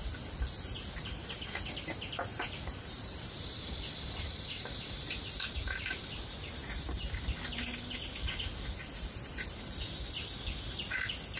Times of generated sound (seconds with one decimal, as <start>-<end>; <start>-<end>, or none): 2.3-7.2